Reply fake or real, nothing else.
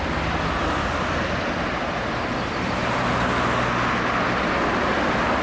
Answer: real